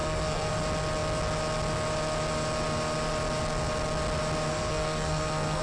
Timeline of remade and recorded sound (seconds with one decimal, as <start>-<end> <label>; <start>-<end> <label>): 0.0-0.5 remade; 0.5-4.5 recorded; 4.5-5.6 remade